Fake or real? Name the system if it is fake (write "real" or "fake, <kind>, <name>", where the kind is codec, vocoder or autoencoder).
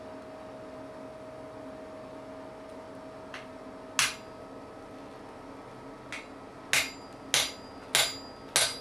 real